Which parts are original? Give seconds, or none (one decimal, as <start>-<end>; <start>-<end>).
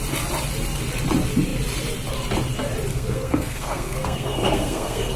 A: 0.0-2.9